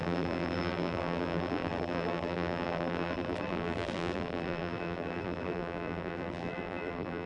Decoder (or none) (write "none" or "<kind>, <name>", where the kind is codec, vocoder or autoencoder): vocoder, BigVGAN v2